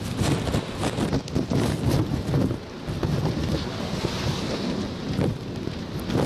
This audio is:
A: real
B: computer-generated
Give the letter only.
A